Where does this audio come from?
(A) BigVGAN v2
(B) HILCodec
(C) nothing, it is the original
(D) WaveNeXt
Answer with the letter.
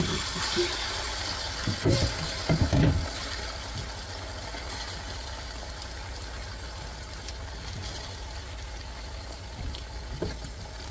C